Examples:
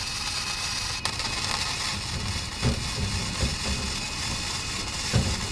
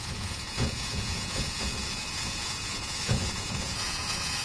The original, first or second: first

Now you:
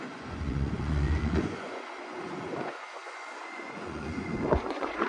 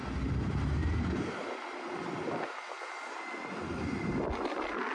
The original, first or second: second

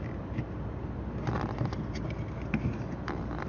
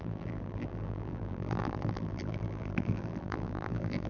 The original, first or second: first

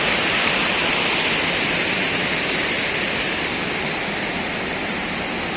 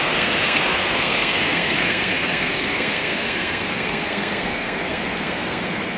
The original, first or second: first